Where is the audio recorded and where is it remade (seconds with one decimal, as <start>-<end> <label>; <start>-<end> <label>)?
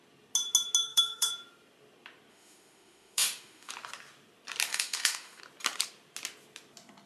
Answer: 0.0-0.8 recorded; 0.8-1.3 remade; 1.3-2.3 recorded; 2.3-3.7 remade; 3.7-4.7 recorded; 4.7-5.4 remade; 5.4-7.1 recorded